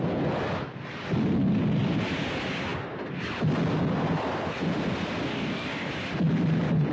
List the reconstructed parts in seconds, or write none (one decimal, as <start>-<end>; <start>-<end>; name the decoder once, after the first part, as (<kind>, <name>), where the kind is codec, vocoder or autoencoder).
5.3-5.9 (codec, DAC)